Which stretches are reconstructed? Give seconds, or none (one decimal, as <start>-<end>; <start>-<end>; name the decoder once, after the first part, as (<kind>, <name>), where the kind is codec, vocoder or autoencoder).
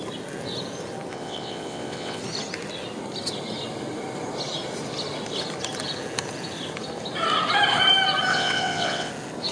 1.1-2.2 (vocoder, WaveNeXt); 8.3-9.1